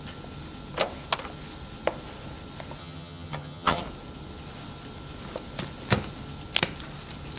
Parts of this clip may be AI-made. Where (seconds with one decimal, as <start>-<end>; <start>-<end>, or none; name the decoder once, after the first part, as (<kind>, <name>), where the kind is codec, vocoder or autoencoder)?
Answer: 2.8-3.8 (vocoder, HiFi-GAN)

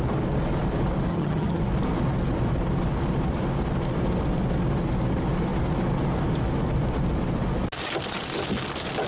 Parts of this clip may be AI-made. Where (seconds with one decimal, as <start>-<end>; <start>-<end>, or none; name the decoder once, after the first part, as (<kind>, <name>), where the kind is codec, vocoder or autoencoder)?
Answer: 1.1-1.6 (vocoder, HiFi-GAN)

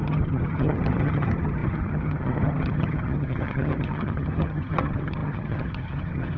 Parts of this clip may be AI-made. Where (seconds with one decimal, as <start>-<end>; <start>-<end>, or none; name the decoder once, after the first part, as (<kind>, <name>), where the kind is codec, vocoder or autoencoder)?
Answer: 0.0-6.4 (vocoder, HiFi-GAN)

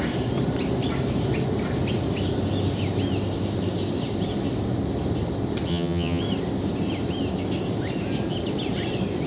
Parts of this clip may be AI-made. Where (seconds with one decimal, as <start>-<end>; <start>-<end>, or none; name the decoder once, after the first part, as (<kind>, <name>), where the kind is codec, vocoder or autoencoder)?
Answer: 5.7-6.2 (vocoder, HiFi-GAN)